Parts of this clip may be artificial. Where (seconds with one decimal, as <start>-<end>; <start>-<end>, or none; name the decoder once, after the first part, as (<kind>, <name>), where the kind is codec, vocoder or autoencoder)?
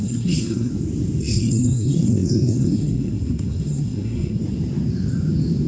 0.0-0.7 (codec, SNAC); 1.2-4.4